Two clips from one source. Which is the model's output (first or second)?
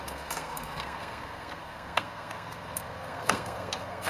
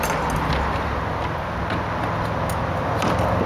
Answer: first